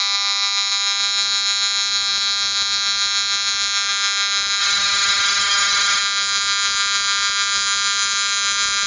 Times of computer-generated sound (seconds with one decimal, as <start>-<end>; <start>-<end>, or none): 4.6-6.0